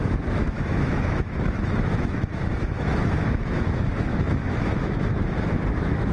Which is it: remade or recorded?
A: remade